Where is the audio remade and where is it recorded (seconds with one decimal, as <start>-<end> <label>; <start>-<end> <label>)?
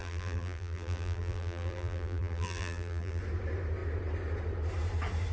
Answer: 0.0-3.2 remade; 3.2-5.3 recorded